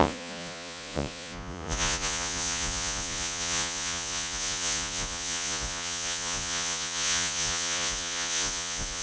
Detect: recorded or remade remade